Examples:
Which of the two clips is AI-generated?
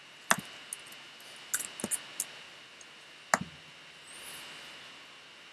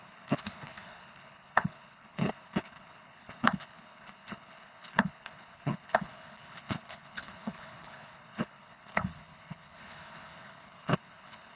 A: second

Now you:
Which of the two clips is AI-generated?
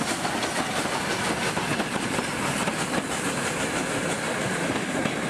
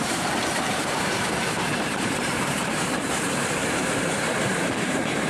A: second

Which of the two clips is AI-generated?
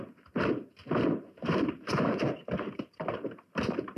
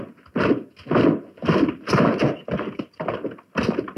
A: first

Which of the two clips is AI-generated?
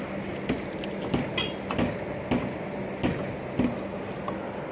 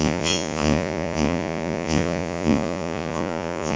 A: second